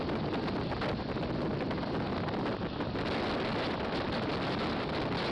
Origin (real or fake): real